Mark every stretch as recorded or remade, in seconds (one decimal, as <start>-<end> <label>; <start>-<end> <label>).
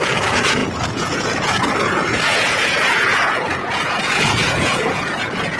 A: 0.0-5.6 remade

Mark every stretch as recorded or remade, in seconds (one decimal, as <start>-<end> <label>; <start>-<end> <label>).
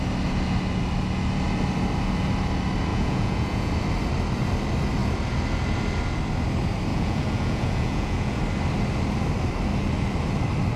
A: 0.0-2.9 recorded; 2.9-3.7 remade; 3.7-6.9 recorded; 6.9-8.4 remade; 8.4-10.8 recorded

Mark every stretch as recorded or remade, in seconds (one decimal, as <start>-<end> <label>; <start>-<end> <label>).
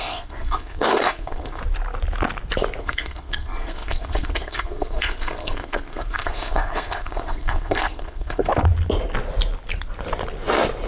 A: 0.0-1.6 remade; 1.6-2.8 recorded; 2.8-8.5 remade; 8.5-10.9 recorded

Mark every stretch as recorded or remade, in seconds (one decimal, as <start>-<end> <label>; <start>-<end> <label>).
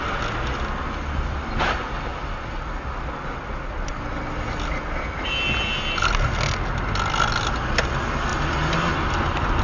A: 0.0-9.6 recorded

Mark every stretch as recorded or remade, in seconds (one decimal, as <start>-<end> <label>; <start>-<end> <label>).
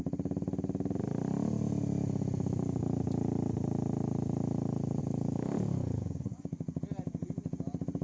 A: 0.0-5.0 recorded; 5.0-6.8 remade; 6.8-8.0 recorded